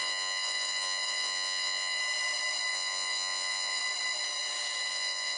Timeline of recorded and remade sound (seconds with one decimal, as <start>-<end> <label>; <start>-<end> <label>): 0.0-2.0 remade; 2.0-2.7 recorded; 2.7-3.8 remade; 3.8-4.9 recorded; 4.9-5.4 remade